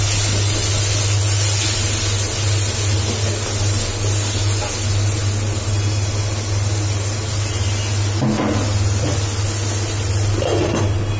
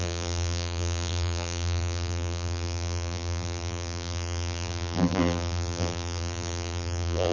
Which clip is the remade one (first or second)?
second